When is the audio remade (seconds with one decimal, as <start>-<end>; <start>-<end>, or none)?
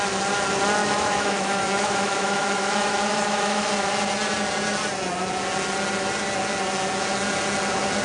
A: 0.8-3.7